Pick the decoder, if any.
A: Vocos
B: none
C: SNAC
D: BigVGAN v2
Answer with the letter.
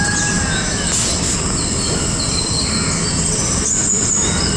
B